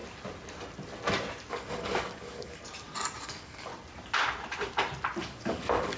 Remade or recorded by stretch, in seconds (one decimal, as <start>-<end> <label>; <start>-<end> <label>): 0.0-1.5 recorded; 1.5-2.6 remade; 2.6-3.2 recorded; 3.2-3.7 remade; 3.7-5.2 recorded; 5.2-6.0 remade